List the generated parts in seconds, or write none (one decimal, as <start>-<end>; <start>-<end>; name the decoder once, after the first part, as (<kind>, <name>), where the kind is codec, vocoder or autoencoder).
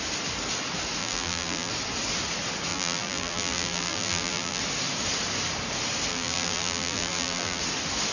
1.0-1.7 (vocoder, BigVGAN v2); 2.7-4.6; 6.1-7.6